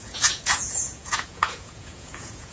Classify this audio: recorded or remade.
remade